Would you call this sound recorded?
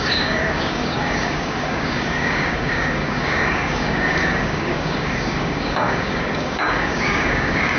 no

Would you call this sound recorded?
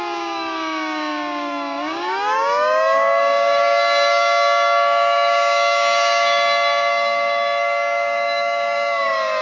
no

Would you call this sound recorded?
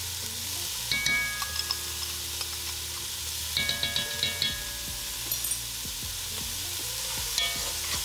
yes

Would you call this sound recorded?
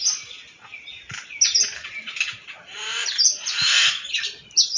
yes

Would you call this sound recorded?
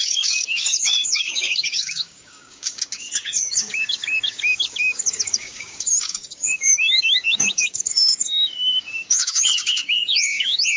no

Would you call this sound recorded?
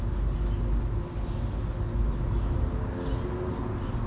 yes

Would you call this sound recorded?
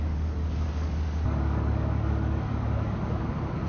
no